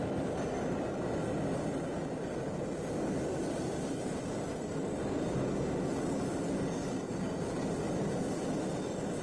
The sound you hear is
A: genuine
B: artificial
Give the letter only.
A